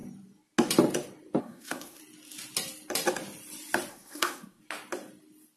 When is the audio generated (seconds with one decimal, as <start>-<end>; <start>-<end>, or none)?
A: 1.4-2.0; 3.9-4.6